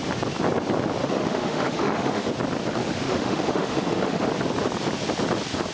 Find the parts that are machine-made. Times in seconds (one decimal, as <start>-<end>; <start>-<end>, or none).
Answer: 1.0-2.3; 2.7-4.3

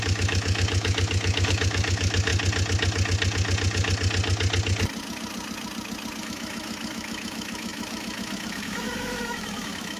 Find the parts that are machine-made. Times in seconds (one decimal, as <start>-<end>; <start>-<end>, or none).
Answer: 0.0-2.3; 6.2-10.0